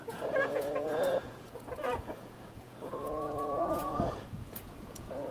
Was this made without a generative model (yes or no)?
no